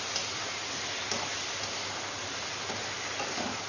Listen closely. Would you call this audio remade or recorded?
recorded